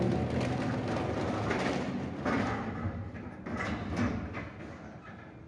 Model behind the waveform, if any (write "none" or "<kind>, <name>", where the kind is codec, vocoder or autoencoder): none